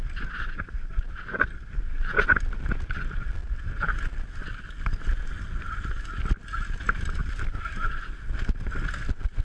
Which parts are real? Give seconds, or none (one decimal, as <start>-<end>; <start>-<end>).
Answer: 0.0-0.9; 1.6-7.2; 8.0-9.4